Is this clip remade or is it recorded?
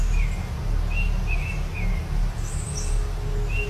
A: recorded